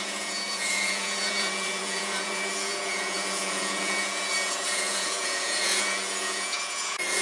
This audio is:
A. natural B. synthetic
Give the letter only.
B